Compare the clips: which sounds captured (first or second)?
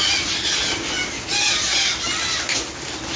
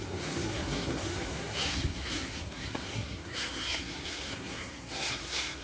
first